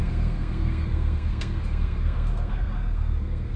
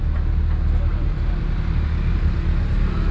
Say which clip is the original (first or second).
second